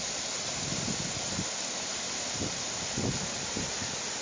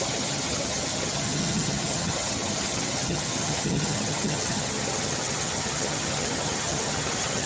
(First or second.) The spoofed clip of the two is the second